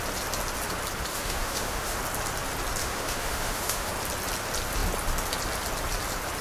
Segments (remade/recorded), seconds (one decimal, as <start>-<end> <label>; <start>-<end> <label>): 0.0-1.1 recorded; 1.1-2.0 remade; 2.0-2.8 recorded; 2.8-3.9 remade; 3.9-6.4 recorded